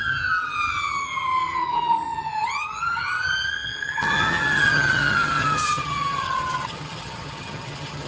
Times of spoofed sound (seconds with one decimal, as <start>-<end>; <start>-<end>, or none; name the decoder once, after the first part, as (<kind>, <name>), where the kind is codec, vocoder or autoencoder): 0.0-8.1 (vocoder, HiFi-GAN)